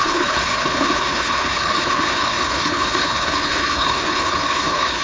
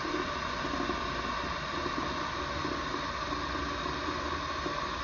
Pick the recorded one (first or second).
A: second